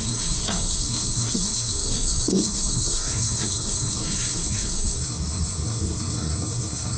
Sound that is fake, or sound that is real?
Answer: fake